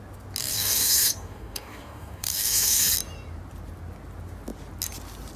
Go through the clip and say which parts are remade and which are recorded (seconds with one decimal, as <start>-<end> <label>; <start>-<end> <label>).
0.0-0.4 recorded; 0.4-2.9 remade; 2.9-5.4 recorded